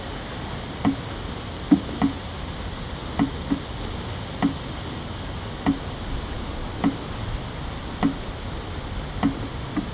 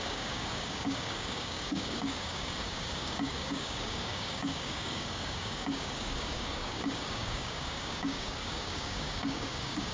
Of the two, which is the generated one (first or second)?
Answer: second